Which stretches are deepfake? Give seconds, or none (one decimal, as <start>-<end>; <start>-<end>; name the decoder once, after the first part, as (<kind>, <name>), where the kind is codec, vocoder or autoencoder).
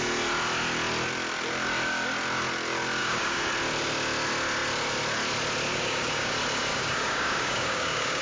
3.0-3.5 (codec, DAC); 5.7-6.3; 6.7-8.2